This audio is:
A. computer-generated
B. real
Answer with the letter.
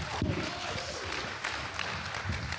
B